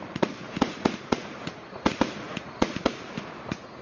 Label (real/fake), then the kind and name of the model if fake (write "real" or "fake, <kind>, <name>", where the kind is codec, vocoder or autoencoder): fake, vocoder, Vocos